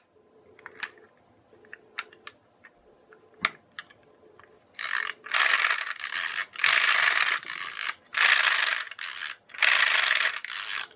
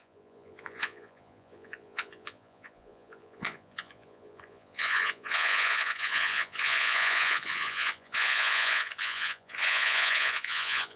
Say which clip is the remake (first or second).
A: second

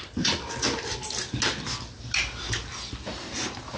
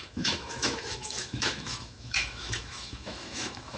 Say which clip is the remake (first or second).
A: second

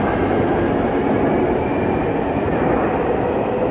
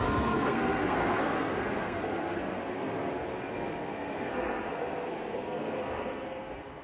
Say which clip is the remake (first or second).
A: second